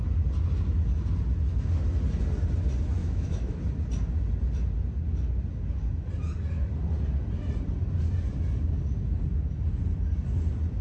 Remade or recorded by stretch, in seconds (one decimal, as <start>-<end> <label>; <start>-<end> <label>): 0.0-3.0 recorded; 3.0-3.6 remade; 3.6-10.8 recorded